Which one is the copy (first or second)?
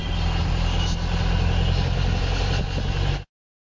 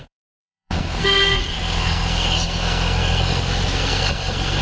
second